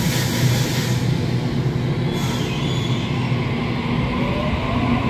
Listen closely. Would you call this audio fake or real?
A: real